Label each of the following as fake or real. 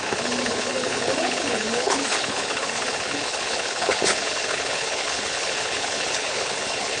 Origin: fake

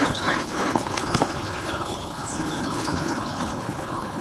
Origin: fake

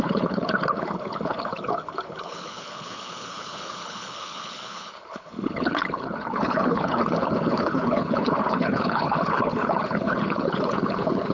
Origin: fake